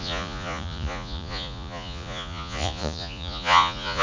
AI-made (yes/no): yes